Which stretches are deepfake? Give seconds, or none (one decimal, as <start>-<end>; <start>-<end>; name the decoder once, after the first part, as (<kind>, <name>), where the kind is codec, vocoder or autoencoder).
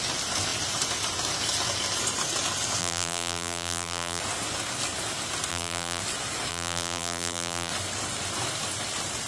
2.8-4.2 (vocoder, BigVGAN v2); 5.5-6.0; 6.5-7.7